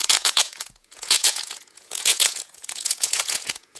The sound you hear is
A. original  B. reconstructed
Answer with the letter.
B